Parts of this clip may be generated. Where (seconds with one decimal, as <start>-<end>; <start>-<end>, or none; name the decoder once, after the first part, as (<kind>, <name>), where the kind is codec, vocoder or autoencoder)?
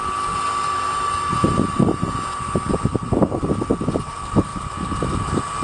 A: 1.3-1.9 (vocoder, BigVGAN v2); 2.9-4.1